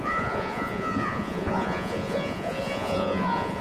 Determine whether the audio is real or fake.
fake